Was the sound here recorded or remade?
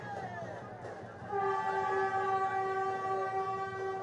recorded